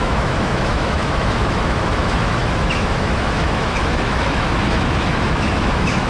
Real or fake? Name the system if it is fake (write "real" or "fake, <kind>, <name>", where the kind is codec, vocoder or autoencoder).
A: fake, autoencoder, DAC-VAE